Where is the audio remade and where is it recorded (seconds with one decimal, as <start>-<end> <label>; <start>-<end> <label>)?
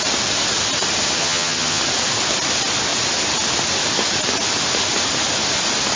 0.0-1.2 recorded; 1.2-1.8 remade; 1.8-6.0 recorded